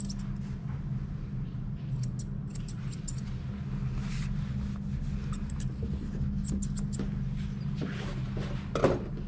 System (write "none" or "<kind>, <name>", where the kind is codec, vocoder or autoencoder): none